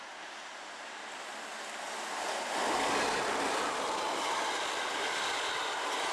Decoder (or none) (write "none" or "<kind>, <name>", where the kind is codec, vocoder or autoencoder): none